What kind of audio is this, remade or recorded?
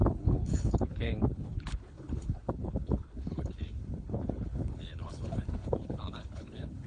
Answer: remade